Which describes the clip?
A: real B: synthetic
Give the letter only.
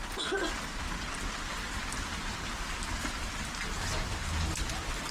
A